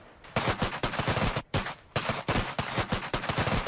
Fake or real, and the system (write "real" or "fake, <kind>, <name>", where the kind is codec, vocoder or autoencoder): real